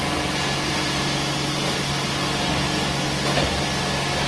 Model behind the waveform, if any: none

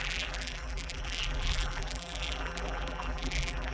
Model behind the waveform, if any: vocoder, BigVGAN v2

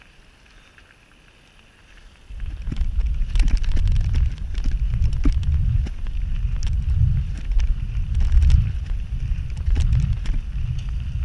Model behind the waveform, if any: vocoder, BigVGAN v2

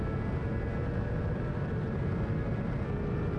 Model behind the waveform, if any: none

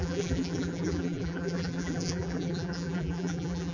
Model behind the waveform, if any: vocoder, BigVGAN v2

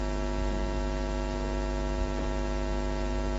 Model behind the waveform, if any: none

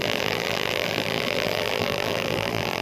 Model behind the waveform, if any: vocoder, BigVGAN v2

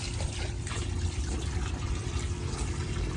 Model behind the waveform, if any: vocoder, BigVGAN v2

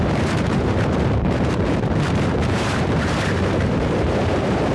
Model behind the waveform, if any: vocoder, BigVGAN v2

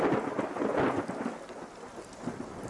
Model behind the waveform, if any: none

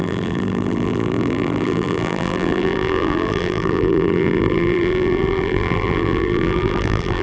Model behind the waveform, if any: vocoder, BigVGAN v2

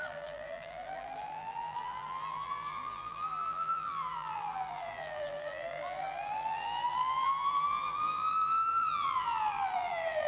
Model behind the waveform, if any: vocoder, BigVGAN v2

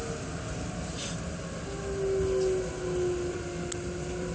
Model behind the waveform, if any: none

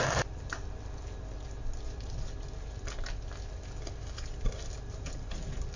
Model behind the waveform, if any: vocoder, BigVGAN v2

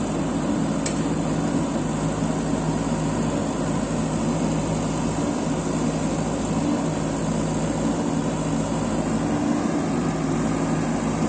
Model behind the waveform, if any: none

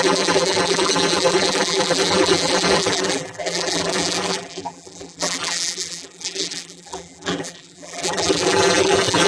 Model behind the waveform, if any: vocoder, BigVGAN v2